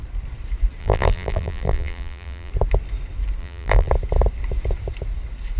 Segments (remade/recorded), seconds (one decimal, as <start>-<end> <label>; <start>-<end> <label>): 0.0-0.8 recorded; 0.8-2.5 remade; 2.5-3.4 recorded; 3.4-3.9 remade; 3.9-5.6 recorded

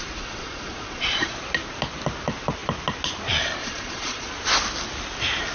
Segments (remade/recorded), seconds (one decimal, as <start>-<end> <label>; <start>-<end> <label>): 0.0-1.3 remade; 1.3-3.6 recorded; 3.6-4.3 remade; 4.3-5.5 recorded

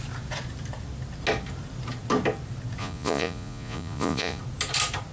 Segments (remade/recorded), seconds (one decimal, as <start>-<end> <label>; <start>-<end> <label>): 0.0-2.8 recorded; 2.8-4.4 remade; 4.4-5.1 recorded

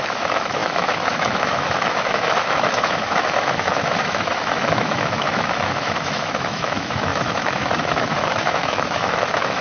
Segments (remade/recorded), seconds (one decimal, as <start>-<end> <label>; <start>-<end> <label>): 0.0-9.6 remade